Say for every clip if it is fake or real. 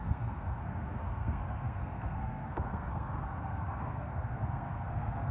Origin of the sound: fake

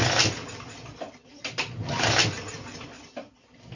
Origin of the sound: real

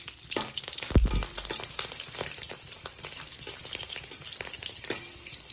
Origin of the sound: real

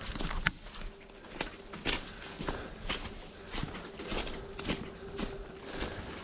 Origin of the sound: real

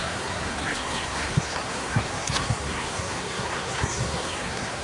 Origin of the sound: fake